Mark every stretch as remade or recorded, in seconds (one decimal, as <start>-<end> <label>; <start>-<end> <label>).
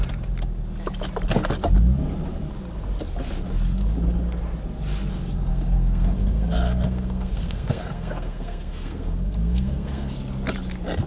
0.0-5.5 recorded; 5.5-10.1 remade; 10.1-11.1 recorded